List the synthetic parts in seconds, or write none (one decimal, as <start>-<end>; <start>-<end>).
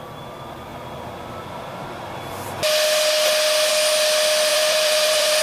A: 4.5-5.4